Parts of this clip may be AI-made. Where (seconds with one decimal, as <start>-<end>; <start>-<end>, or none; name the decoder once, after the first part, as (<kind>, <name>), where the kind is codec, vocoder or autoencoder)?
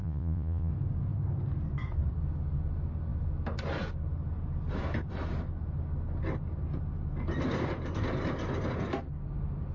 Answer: 0.0-0.7 (vocoder, Vocos)